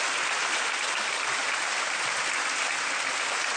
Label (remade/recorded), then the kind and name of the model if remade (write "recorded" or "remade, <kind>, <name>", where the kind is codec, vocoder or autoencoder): recorded